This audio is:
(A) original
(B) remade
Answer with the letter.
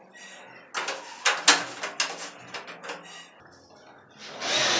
A